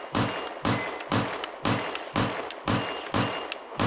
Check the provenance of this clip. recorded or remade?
recorded